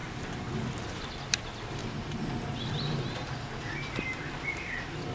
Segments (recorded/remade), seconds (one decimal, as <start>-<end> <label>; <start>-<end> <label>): 0.0-1.8 recorded; 1.8-5.1 remade